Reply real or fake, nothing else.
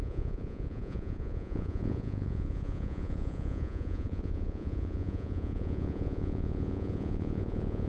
fake